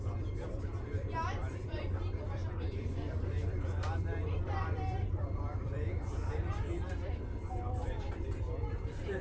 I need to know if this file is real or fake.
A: fake